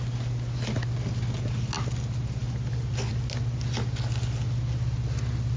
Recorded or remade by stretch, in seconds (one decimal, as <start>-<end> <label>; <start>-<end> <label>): 0.0-5.6 recorded